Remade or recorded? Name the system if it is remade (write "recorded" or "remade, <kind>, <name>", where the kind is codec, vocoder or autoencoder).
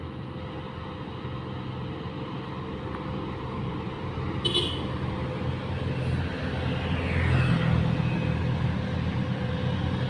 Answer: recorded